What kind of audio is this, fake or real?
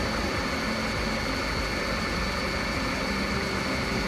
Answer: real